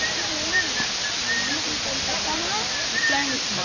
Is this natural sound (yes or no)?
yes